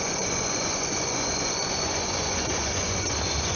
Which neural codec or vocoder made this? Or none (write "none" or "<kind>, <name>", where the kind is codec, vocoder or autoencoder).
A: vocoder, Vocos